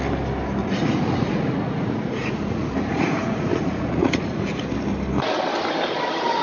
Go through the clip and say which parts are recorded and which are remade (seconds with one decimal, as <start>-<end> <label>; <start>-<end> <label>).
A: 0.0-0.6 recorded; 0.6-4.4 remade; 4.4-6.4 recorded